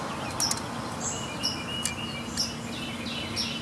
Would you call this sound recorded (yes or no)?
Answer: yes